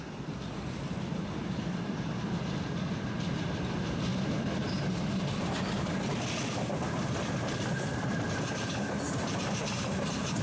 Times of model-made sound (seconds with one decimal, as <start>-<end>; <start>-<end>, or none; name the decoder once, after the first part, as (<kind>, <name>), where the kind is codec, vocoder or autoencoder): 0.0-10.4 (vocoder, BigVGAN v2)